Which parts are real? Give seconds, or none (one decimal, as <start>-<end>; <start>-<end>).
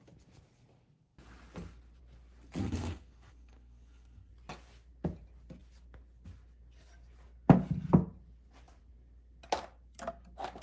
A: 0.0-2.6; 4.3-10.6